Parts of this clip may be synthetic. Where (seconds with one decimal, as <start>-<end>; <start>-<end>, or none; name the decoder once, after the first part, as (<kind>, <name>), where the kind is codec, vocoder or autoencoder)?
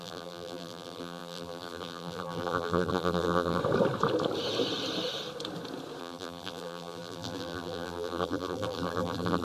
0.0-3.6 (vocoder, BigVGAN v2); 6.0-9.4